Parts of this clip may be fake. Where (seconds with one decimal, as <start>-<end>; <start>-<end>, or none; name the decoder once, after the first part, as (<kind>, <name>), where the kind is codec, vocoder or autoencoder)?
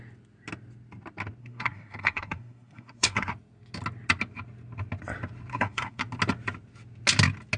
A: 1.4-3.3 (codec, SNAC); 5.5-6.0